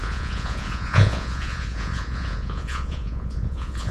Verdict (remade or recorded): remade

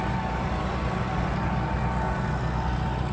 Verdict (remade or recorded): recorded